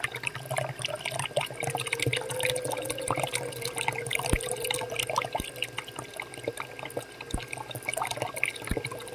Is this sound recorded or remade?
recorded